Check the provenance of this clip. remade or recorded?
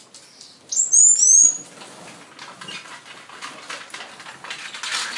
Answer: recorded